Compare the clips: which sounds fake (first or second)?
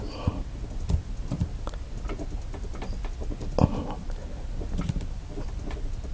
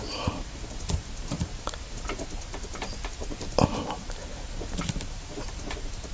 second